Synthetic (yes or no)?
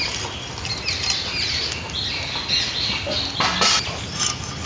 no